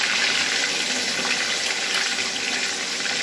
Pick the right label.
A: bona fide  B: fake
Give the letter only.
A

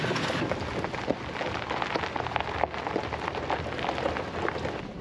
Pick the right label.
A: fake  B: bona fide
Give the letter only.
B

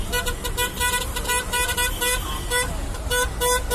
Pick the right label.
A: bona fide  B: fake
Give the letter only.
B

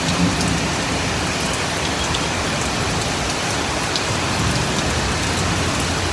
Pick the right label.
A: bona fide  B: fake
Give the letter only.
A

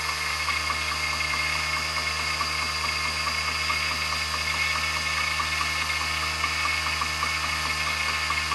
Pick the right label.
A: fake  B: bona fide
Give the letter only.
B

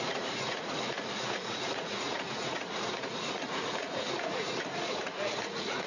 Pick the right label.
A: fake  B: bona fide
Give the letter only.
A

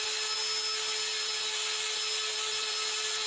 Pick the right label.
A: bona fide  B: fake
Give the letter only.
A